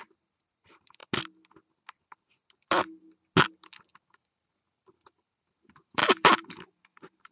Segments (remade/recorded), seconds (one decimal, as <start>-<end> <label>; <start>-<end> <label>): 0.0-1.0 remade; 1.0-4.1 recorded; 4.1-7.3 remade